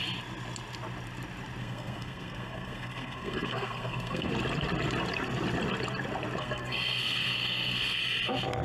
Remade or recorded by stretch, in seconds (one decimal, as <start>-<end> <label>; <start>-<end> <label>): 0.0-1.6 recorded; 1.6-4.3 remade; 4.3-6.4 recorded; 6.4-8.0 remade; 8.0-8.6 recorded